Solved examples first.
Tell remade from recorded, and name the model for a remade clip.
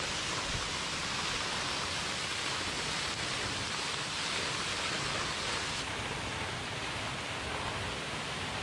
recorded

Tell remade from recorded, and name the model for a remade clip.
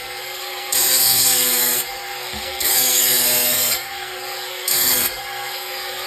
remade, codec, SNAC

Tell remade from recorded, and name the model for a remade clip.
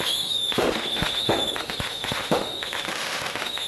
remade, autoencoder, DAC-VAE